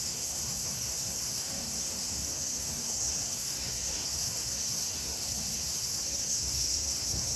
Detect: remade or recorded remade